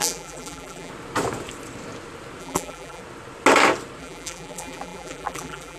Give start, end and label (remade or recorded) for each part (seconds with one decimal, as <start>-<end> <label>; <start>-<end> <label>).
0.0-0.9 remade; 0.9-2.4 recorded; 2.4-3.0 remade; 3.0-4.0 recorded; 4.0-5.8 remade